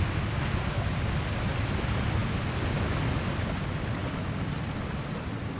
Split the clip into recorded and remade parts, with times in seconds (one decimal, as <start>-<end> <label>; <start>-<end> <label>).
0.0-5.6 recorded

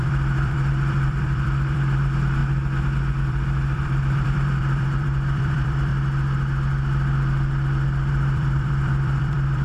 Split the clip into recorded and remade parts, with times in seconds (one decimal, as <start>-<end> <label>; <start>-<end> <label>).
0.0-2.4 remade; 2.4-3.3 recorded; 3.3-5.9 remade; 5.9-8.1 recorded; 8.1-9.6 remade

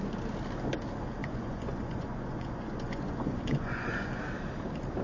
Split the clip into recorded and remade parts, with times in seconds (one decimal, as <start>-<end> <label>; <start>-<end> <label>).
0.0-1.2 recorded; 1.2-4.2 remade; 4.2-5.0 recorded